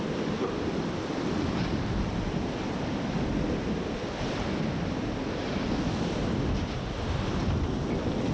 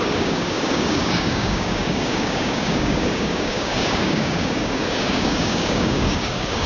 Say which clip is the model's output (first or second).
second